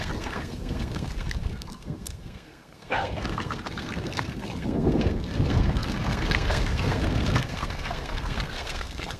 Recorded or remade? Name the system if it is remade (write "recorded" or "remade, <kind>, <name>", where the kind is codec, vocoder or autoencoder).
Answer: remade, codec, SNAC